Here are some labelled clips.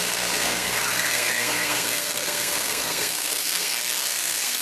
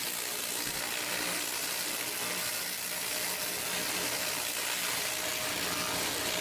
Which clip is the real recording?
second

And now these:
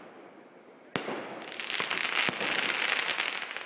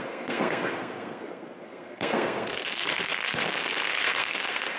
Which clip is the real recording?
first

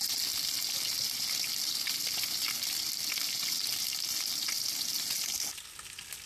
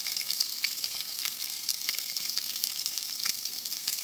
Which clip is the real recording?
first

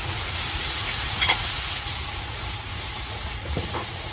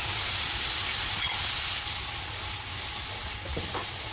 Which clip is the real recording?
second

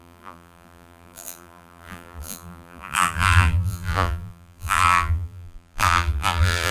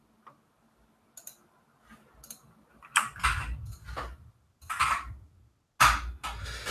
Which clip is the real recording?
second